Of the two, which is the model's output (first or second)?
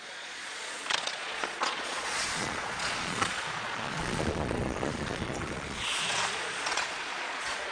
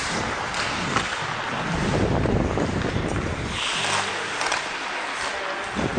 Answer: first